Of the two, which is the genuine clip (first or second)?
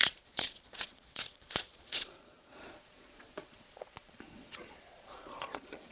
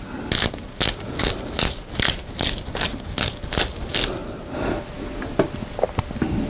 second